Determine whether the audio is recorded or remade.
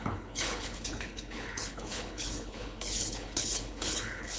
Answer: remade